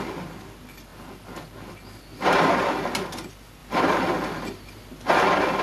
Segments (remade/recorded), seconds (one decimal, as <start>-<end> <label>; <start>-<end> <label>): 0.0-5.6 recorded